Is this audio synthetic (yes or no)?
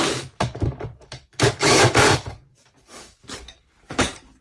yes